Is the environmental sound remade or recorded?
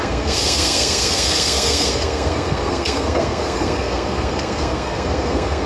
remade